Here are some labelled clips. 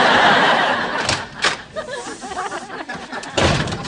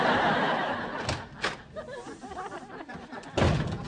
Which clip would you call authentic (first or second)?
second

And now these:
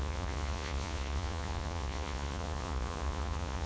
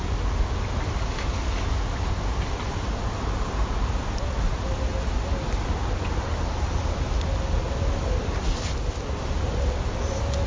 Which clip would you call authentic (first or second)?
second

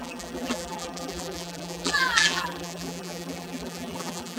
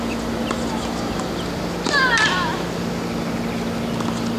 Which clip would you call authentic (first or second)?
second